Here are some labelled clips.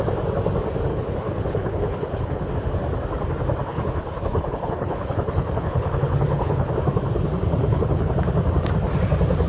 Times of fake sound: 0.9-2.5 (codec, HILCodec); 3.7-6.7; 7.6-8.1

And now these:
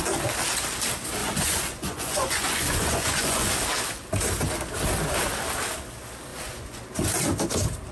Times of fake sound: 1.2-3.5 (vocoder, Vocos); 6.3-6.8

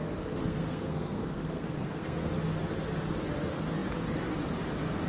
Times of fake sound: 0.4-2.3 (codec, SNAC)